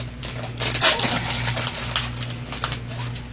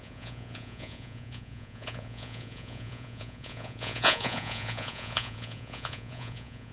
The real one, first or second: first